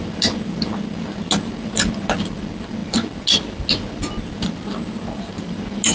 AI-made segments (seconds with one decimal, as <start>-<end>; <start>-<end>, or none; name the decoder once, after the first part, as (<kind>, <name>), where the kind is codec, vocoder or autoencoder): none